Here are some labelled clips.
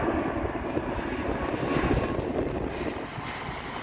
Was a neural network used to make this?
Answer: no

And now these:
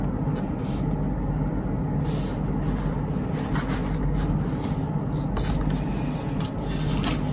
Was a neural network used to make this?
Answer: no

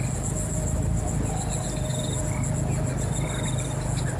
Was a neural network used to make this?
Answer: no